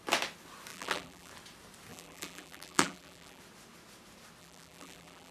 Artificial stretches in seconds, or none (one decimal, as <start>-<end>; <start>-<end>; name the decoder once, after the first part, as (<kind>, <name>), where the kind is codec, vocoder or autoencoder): 0.7-1.3 (vocoder, BigVGAN v2); 1.9-3.4; 4.4-5.3